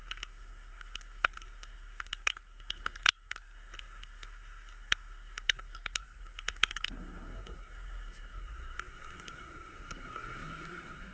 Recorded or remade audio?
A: remade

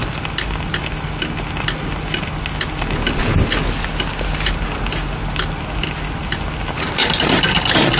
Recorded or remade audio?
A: recorded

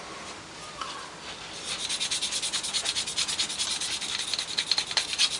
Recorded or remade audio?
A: recorded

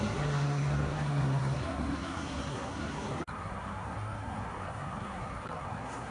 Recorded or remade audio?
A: remade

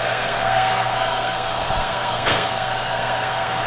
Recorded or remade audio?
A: remade